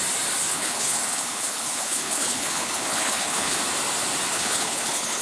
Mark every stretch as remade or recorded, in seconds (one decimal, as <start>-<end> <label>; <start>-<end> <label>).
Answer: 0.0-0.5 recorded; 0.5-3.6 remade; 3.6-4.3 recorded; 4.3-5.2 remade